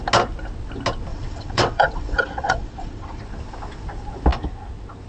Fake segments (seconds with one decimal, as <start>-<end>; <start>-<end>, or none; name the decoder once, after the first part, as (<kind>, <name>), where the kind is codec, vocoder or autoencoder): 1.1-3.2 (vocoder, WaveNeXt)